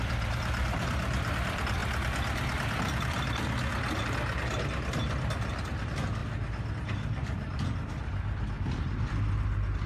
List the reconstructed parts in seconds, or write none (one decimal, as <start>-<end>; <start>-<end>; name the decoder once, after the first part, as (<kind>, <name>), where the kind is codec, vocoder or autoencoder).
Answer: 0.0-1.8 (vocoder, BigVGAN v2); 4.4-5.0; 5.5-6.2; 6.7-9.9